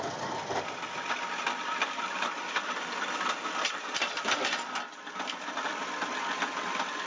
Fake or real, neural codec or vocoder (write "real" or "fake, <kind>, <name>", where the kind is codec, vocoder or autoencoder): fake, vocoder, BigVGAN v2